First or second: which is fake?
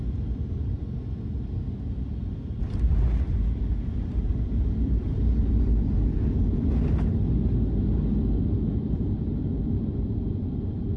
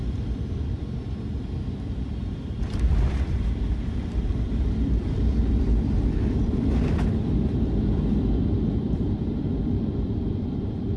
second